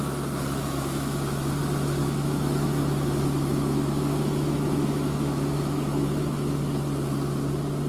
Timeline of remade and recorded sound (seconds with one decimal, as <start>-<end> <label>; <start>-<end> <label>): 0.0-0.6 recorded; 0.6-1.6 remade; 1.6-2.0 recorded; 2.0-6.6 remade; 6.6-7.9 recorded